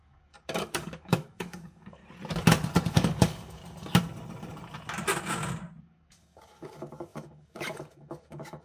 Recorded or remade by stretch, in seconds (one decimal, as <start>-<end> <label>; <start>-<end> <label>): 0.0-2.0 remade; 2.0-2.9 recorded; 2.9-3.6 remade; 3.6-5.8 recorded; 5.8-8.6 remade